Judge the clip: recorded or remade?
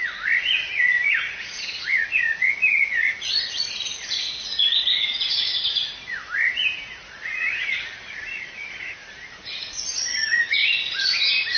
remade